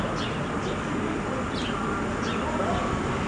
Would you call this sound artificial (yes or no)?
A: no